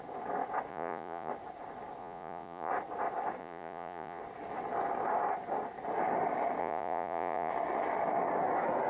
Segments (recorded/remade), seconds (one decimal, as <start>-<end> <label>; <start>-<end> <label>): 0.0-0.7 recorded; 0.7-1.3 remade; 1.3-2.0 recorded; 2.0-2.7 remade; 2.7-3.4 recorded; 3.4-4.2 remade; 4.2-6.6 recorded; 6.6-7.5 remade; 7.5-8.9 recorded